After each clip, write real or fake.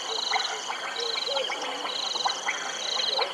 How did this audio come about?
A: real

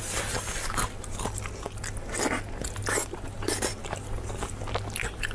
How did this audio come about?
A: real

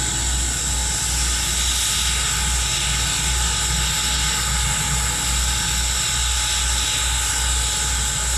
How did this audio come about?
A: real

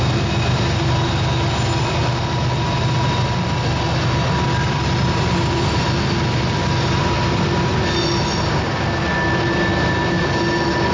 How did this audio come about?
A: real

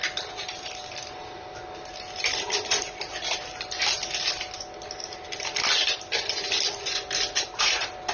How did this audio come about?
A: real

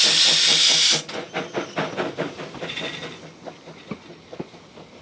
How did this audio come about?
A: real